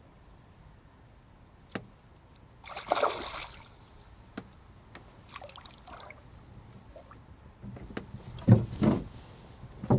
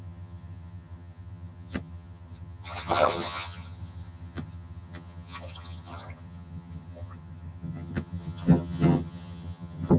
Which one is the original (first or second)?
first